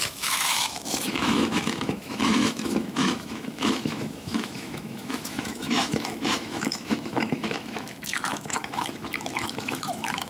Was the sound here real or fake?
fake